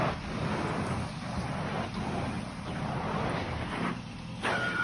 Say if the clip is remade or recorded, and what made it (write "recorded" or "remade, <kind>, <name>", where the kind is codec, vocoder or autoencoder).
recorded